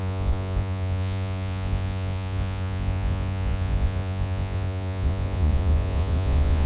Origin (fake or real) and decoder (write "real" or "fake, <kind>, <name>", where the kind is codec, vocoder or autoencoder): fake, vocoder, Vocos